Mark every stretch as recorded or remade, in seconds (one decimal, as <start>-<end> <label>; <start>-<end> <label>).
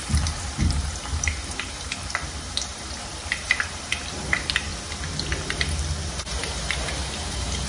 0.0-4.7 remade; 4.7-6.1 recorded; 6.1-7.7 remade